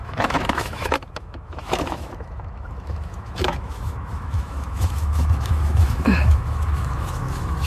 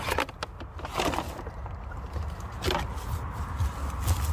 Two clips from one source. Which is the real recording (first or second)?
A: second